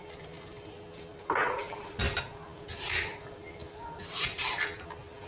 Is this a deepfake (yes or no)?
no